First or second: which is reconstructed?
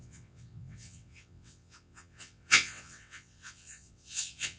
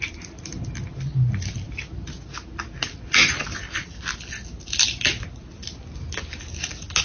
first